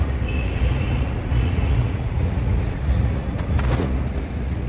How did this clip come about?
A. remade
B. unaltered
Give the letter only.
A